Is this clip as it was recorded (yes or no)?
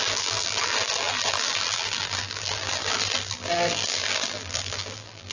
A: no